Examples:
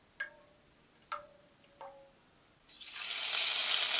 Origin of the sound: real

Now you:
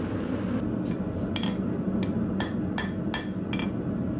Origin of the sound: real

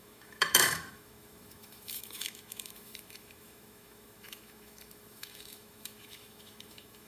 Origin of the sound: fake